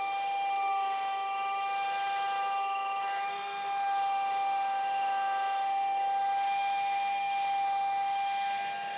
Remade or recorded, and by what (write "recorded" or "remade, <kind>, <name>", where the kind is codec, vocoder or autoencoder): remade, autoencoder, DAC-VAE